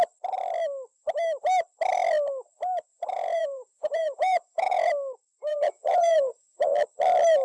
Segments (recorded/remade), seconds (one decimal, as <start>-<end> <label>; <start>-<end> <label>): 0.0-2.9 recorded; 2.9-4.9 remade; 4.9-5.5 recorded; 5.5-6.8 remade; 6.8-7.4 recorded